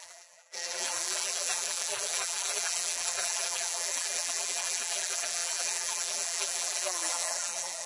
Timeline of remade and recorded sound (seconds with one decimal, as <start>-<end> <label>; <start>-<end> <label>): 0.0-7.9 remade